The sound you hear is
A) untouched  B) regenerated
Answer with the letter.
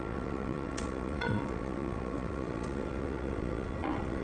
B